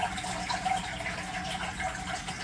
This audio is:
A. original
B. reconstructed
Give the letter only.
A